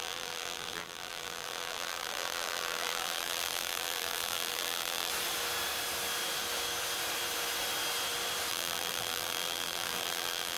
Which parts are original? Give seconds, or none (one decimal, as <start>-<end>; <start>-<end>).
5.1-8.5